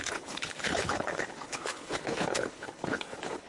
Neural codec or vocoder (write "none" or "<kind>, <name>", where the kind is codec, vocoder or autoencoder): codec, HILCodec